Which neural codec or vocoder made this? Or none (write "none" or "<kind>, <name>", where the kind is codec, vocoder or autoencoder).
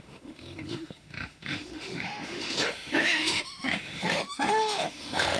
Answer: autoencoder, DAC-VAE